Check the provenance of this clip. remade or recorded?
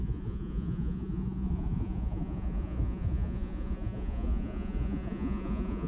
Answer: remade